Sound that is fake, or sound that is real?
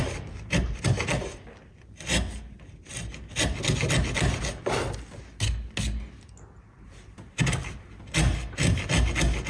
real